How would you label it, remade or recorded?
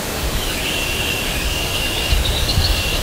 remade